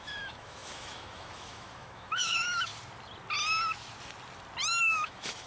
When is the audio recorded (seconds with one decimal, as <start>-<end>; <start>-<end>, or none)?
2.7-4.8